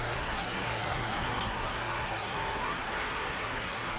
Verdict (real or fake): fake